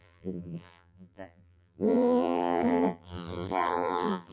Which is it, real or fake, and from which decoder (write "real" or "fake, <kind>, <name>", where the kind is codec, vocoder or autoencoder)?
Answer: fake, vocoder, BigVGAN v2